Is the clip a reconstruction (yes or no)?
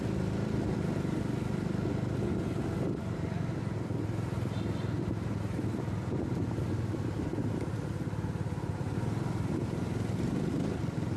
no